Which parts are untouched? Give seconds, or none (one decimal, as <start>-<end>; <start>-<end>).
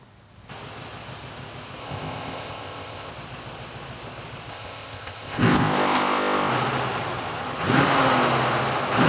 0.0-1.8; 3.1-4.5; 6.5-9.1